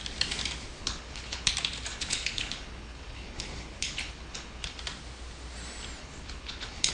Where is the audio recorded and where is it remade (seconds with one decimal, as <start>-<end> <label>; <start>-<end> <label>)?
0.0-0.8 recorded; 0.8-1.5 remade; 1.5-1.9 recorded; 1.9-4.8 remade; 4.8-6.0 recorded; 6.0-6.9 remade